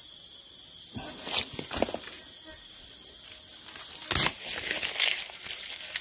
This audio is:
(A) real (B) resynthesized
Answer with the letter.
A